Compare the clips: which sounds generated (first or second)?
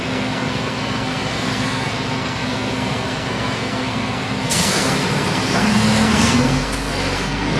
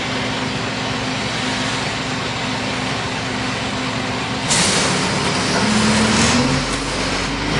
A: first